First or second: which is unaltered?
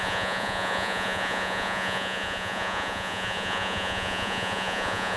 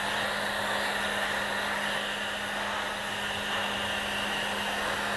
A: second